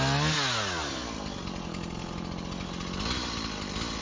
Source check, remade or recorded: recorded